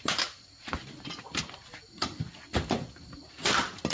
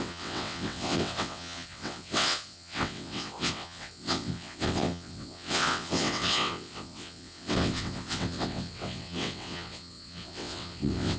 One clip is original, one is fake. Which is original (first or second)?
first